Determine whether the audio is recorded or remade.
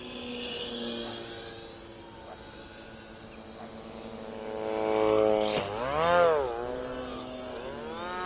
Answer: recorded